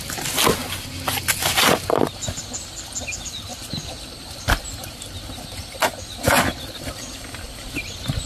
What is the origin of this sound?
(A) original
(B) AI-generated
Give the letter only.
A